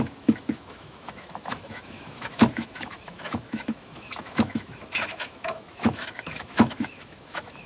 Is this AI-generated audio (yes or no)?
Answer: yes